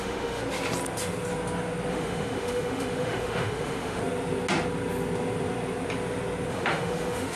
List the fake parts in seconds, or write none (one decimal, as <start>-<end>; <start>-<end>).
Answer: 0.0-0.4; 1.9-4.0; 6.5-7.4